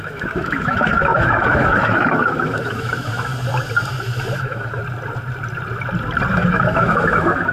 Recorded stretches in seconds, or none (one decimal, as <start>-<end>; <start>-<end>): 3.3-3.9; 4.8-6.3